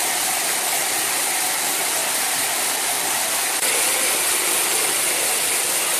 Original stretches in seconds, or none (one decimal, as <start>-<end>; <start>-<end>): 0.0-6.0